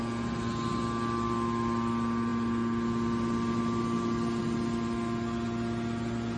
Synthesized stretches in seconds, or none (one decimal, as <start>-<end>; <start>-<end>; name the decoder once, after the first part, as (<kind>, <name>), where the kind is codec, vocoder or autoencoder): none